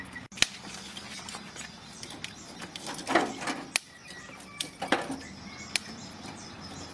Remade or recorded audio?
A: recorded